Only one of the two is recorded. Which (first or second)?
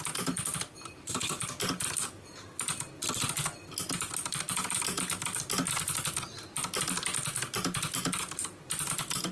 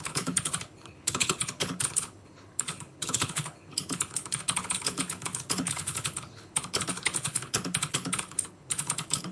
first